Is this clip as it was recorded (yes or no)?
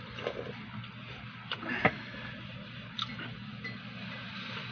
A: yes